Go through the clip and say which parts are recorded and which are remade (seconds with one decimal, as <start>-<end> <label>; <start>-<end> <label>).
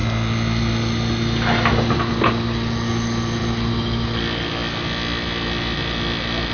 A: 0.0-6.5 recorded